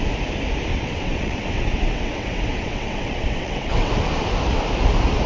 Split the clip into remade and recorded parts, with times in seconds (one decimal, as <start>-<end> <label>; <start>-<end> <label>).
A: 0.0-0.7 recorded; 0.7-3.9 remade; 3.9-5.3 recorded